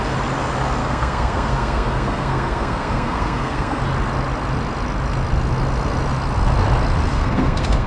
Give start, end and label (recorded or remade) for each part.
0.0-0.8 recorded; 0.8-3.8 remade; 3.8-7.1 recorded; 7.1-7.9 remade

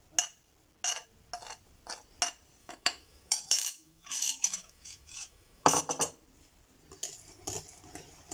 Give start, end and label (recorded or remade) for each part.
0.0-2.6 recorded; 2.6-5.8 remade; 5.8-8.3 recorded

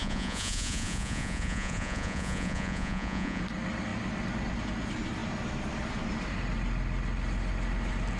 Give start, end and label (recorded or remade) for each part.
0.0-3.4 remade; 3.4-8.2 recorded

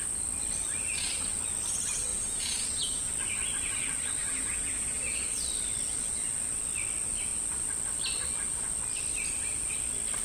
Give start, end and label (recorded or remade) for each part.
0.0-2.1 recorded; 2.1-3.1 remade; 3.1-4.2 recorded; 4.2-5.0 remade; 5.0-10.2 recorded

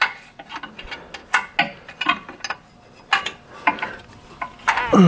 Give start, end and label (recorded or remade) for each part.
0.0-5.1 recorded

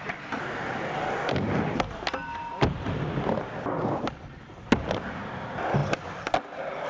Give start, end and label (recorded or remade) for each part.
0.0-6.9 recorded

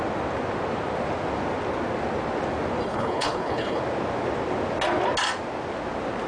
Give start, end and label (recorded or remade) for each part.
0.0-2.8 recorded; 2.8-3.8 remade; 3.8-6.3 recorded

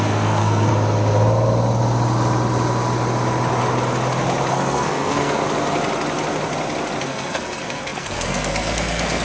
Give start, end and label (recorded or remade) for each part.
0.0-0.7 remade; 0.7-4.5 recorded; 4.5-5.4 remade; 5.4-7.0 recorded; 7.0-9.2 remade